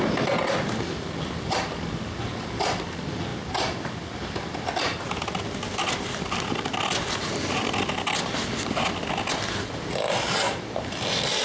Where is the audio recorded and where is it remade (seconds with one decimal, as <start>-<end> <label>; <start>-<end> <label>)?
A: 0.0-11.4 recorded

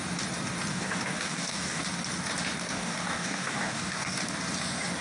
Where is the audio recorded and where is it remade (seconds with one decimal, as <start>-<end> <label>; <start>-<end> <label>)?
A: 0.0-0.7 recorded; 0.7-1.8 remade; 1.8-2.6 recorded; 2.6-4.2 remade; 4.2-5.0 recorded

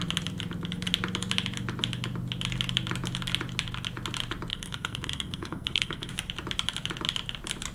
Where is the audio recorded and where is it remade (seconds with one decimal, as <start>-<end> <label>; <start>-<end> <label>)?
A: 0.0-4.5 recorded; 4.5-6.1 remade; 6.1-7.7 recorded

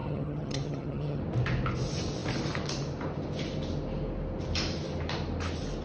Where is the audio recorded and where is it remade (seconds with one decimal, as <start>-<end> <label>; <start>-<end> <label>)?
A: 0.0-1.2 remade; 1.2-5.8 recorded

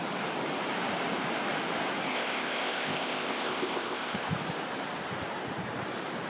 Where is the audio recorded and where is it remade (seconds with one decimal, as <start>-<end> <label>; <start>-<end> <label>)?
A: 0.0-2.1 recorded; 2.1-4.3 remade; 4.3-6.3 recorded

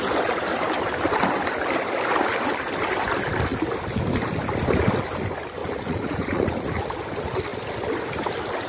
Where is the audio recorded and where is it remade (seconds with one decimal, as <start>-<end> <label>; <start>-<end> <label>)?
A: 0.0-5.6 recorded; 5.6-6.8 remade; 6.8-8.7 recorded